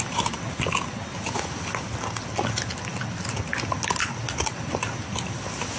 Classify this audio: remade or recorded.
recorded